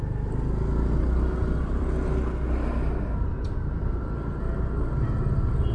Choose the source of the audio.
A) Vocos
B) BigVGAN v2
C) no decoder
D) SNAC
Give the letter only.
C